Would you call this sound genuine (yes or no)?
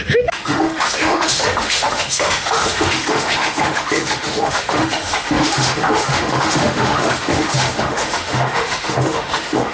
no